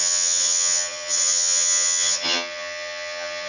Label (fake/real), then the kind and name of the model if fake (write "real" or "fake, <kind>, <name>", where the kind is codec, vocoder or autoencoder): fake, vocoder, HiFi-GAN